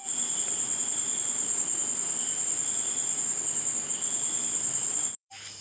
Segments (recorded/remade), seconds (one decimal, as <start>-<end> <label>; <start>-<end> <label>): 0.0-5.6 remade